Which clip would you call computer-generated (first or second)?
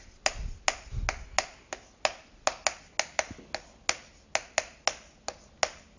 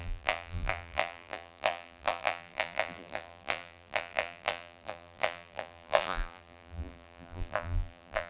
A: second